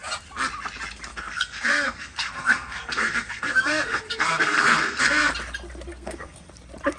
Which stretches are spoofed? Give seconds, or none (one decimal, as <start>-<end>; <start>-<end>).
1.1-5.3; 5.9-6.5